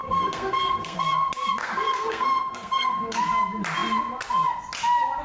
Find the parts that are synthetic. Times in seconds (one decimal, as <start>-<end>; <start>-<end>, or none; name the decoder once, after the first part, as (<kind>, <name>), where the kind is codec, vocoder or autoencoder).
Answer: 0.0-1.0 (codec, SNAC); 1.6-3.2

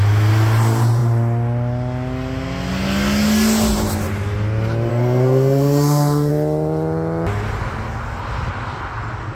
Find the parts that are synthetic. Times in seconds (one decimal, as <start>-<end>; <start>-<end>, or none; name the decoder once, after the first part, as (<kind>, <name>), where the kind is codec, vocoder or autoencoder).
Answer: 4.9-6.3 (codec, SNAC)

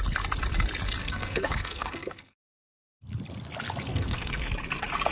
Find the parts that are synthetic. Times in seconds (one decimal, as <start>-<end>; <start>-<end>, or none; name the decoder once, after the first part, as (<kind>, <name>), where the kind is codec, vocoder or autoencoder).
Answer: 1.0-2.7 (codec, SNAC); 3.9-4.5

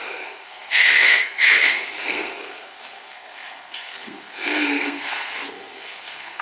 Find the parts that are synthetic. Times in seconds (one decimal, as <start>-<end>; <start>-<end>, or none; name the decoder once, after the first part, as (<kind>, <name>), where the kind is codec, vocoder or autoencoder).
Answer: 0.0-6.4 (codec, SNAC)